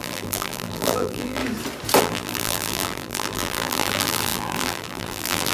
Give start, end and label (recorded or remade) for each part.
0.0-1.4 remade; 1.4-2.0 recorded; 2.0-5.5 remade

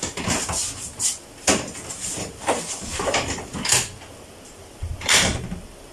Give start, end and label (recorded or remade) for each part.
0.0-4.9 recorded; 4.9-5.5 remade; 5.5-5.9 recorded

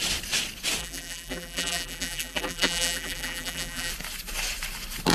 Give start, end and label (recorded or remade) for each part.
0.0-0.8 recorded; 0.8-3.9 remade; 3.9-5.1 recorded

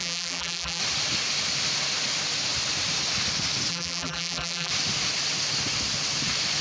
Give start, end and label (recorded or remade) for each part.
0.0-0.8 remade; 0.8-3.7 recorded; 3.7-4.7 remade; 4.7-6.6 recorded

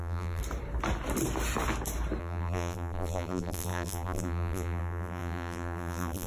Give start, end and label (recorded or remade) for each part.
0.0-0.4 remade; 0.4-2.2 recorded; 2.2-6.3 remade

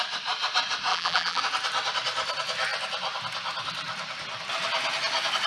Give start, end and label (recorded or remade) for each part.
0.0-0.9 recorded; 0.9-1.4 remade; 1.4-5.5 recorded